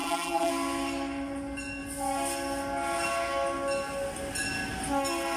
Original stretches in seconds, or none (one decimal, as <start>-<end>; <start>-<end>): 0.5-5.4